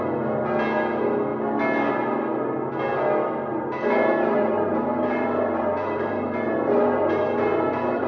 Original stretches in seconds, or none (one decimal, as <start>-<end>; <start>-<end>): 0.0-3.5